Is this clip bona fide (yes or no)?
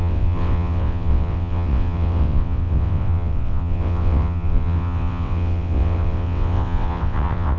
no